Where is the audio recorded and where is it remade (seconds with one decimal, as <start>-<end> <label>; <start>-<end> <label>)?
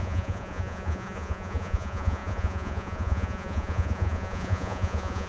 0.0-5.3 remade